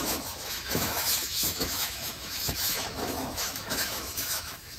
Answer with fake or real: fake